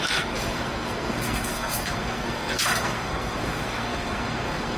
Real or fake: fake